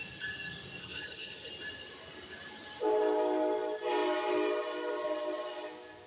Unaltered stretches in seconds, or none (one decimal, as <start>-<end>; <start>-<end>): 0.0-0.8; 1.5-6.1